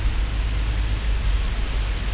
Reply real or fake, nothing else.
real